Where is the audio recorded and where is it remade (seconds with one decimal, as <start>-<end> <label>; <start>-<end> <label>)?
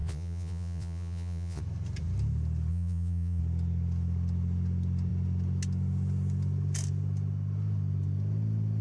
0.0-1.6 remade; 1.6-2.7 recorded; 2.7-3.4 remade; 3.4-8.8 recorded